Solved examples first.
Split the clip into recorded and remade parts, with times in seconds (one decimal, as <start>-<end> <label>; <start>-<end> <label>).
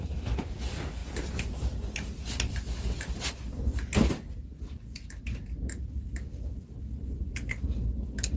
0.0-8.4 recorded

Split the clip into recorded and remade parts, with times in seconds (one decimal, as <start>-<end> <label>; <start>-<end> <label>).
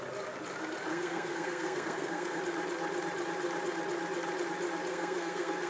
0.0-0.9 recorded; 0.9-2.4 remade; 2.4-4.9 recorded; 4.9-5.7 remade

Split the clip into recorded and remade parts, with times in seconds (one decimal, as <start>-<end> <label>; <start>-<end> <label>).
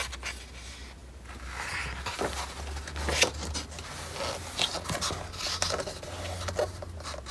0.0-7.3 recorded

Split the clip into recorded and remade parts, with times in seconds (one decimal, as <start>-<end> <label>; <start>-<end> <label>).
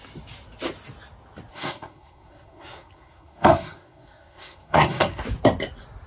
0.0-1.5 recorded; 1.5-5.2 remade; 5.2-6.1 recorded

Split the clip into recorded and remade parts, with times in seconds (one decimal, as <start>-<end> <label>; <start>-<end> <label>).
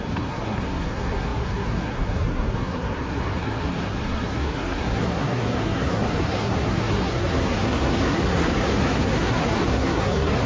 0.0-10.5 remade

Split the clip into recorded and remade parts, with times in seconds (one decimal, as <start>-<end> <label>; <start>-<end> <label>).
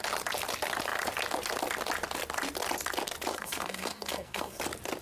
0.0-3.3 recorded; 3.3-4.6 remade; 4.6-5.0 recorded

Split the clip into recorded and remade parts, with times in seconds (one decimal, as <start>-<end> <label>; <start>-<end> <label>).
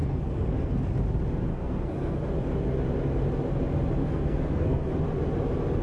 0.0-0.8 remade; 0.8-1.5 recorded; 1.5-2.3 remade; 2.3-4.0 recorded; 4.0-4.9 remade; 4.9-5.8 recorded